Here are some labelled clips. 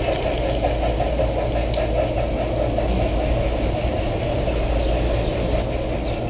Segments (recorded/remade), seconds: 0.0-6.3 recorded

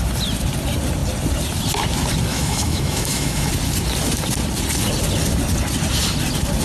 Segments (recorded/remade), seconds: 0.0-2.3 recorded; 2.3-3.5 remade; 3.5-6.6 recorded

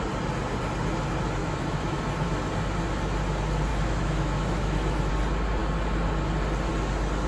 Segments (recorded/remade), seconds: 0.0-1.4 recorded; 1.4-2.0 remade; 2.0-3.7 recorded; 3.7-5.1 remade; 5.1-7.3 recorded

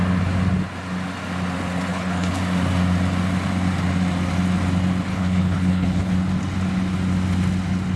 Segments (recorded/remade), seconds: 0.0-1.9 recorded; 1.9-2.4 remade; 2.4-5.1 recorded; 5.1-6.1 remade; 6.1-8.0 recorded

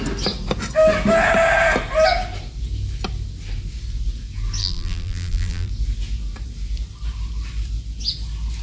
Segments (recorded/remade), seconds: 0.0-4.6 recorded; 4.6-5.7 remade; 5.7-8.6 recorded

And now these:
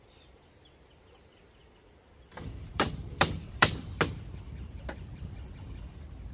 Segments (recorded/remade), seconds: 0.0-1.6 recorded; 1.6-3.8 remade; 3.8-6.3 recorded